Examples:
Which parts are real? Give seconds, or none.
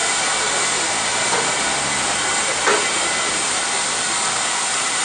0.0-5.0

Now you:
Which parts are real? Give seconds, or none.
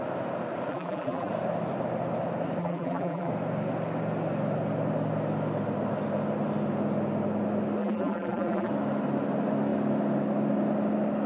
0.0-0.7; 1.3-2.6; 3.3-7.8; 8.7-11.3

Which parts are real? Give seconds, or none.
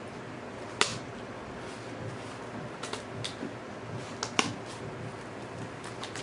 0.0-6.2